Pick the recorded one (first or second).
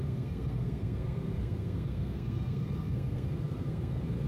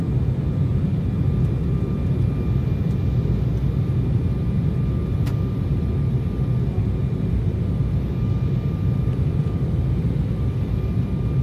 second